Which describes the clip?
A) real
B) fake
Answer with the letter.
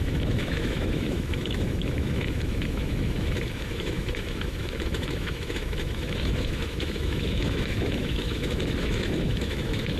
B